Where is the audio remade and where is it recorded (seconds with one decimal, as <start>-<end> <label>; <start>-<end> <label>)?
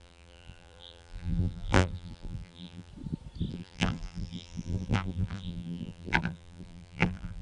0.0-2.9 remade; 2.9-3.5 recorded; 3.5-7.4 remade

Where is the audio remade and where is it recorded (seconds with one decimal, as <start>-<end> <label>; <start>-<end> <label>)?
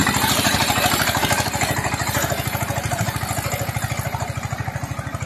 0.0-3.2 remade; 3.2-5.3 recorded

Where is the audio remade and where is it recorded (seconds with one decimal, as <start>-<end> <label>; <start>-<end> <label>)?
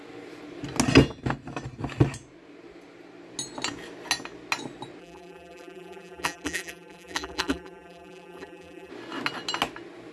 0.0-5.0 recorded; 5.0-8.9 remade; 8.9-10.1 recorded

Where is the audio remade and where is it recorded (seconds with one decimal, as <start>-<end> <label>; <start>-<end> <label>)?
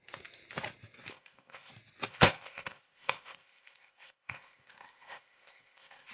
0.0-1.1 recorded; 1.1-1.7 remade; 1.7-2.1 recorded; 2.1-6.1 remade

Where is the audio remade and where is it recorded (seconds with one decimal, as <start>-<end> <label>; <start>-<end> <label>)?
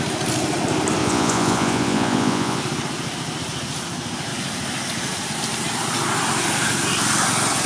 0.0-1.0 recorded; 1.0-2.6 remade; 2.6-7.7 recorded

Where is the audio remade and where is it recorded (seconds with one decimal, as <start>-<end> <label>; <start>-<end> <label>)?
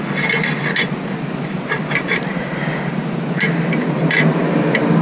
0.0-5.0 recorded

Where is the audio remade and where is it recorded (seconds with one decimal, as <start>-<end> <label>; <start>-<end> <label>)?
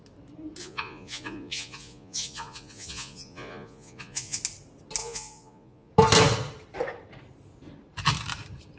0.0-0.6 recorded; 0.6-4.4 remade; 4.4-5.0 recorded; 5.0-5.9 remade; 5.9-8.8 recorded